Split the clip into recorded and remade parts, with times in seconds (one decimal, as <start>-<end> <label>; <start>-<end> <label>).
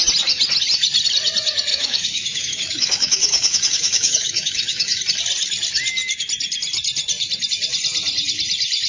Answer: 0.0-1.7 recorded; 1.7-5.0 remade; 5.0-8.9 recorded